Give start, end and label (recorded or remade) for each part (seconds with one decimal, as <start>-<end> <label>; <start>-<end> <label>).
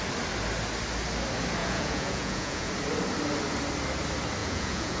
0.0-1.6 recorded; 1.6-2.7 remade; 2.7-4.4 recorded; 4.4-5.0 remade